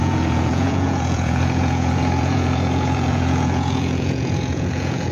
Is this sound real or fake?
fake